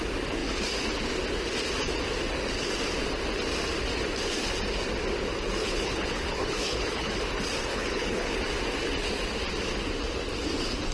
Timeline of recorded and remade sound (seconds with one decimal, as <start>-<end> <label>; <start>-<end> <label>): 0.0-5.6 recorded; 5.6-7.1 remade; 7.1-7.7 recorded; 7.7-8.4 remade; 8.4-10.9 recorded